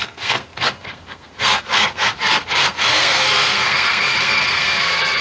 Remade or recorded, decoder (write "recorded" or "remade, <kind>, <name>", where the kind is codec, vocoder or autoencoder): remade, codec, SNAC